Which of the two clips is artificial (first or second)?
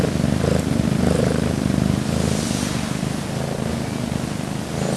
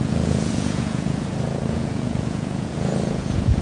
second